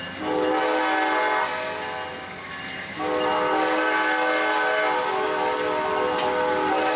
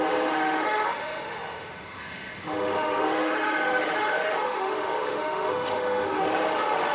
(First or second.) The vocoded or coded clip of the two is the second